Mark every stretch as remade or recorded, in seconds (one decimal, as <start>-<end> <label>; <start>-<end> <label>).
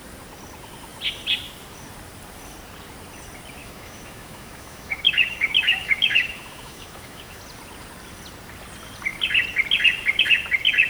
0.0-3.6 recorded; 3.6-7.4 remade; 7.4-10.9 recorded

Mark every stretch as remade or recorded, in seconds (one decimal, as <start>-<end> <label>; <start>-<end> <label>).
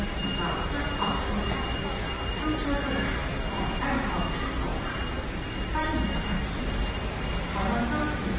0.0-8.4 recorded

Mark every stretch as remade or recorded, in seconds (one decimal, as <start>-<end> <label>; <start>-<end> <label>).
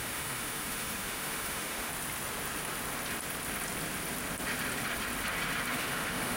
0.0-1.9 remade; 1.9-5.7 recorded; 5.7-6.4 remade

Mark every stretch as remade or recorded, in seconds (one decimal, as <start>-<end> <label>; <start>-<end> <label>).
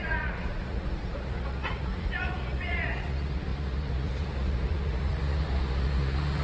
0.0-6.4 remade